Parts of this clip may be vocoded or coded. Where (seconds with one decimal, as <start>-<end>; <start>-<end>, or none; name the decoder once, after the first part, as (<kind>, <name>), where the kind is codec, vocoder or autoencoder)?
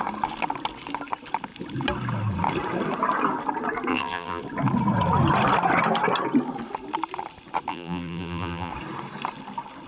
3.9-4.4 (vocoder, BigVGAN v2); 7.7-8.7